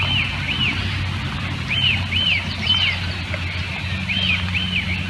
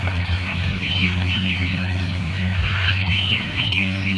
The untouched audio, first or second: first